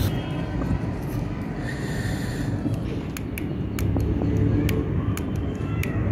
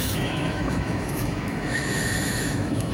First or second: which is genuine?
first